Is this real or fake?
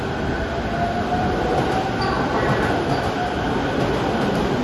real